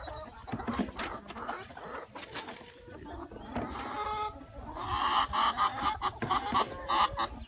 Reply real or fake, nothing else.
real